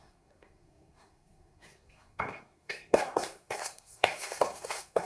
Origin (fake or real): fake